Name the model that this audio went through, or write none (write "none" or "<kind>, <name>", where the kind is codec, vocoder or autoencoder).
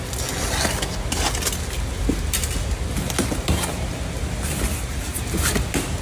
none